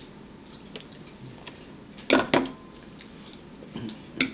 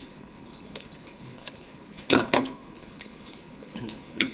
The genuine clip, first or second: first